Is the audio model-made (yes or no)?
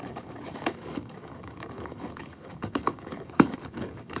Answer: yes